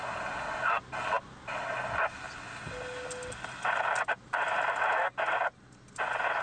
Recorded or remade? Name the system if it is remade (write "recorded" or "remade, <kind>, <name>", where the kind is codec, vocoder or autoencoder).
recorded